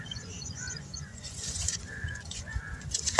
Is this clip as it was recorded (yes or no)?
no